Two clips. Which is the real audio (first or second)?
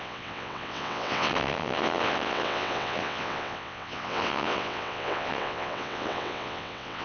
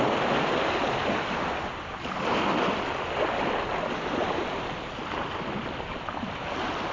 second